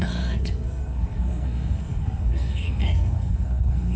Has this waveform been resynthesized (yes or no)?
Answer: yes